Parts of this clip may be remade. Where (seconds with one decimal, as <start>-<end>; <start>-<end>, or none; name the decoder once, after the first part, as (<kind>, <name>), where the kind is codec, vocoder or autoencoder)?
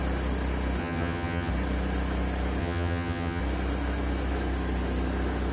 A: 0.8-1.5 (vocoder, HiFi-GAN); 2.6-3.4